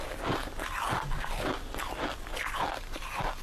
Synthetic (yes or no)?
no